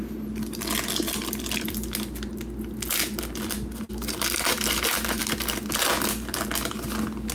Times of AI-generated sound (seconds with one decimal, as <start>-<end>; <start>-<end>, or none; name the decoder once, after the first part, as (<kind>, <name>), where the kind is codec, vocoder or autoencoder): none